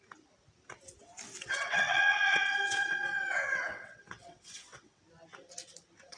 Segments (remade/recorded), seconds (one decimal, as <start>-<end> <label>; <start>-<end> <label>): 0.0-1.4 recorded; 1.4-5.0 remade; 5.0-6.2 recorded